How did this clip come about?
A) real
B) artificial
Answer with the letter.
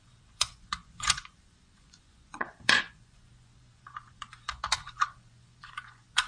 B